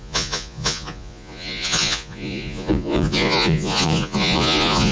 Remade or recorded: remade